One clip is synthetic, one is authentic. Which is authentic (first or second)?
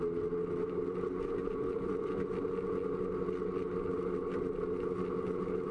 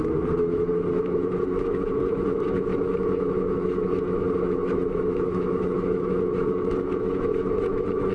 first